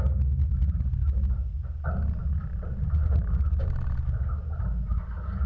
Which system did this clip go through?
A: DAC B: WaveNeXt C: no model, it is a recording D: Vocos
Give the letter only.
C